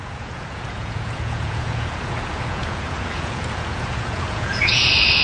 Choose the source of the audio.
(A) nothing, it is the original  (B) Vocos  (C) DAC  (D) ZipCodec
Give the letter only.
B